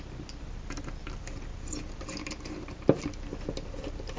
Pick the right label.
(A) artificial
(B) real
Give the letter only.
B